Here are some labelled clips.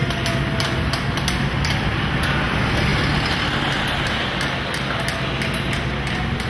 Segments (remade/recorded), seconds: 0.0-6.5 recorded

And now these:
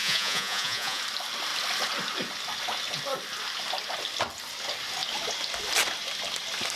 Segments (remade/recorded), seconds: 0.0-1.0 remade; 1.0-6.8 recorded

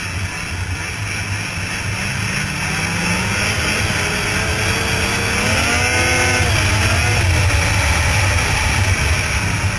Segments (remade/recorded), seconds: 0.0-9.8 recorded